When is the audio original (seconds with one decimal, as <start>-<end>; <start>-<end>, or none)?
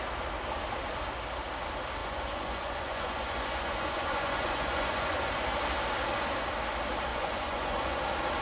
0.0-2.0; 5.3-7.1; 8.0-8.4